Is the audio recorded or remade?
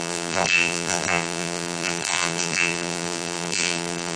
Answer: remade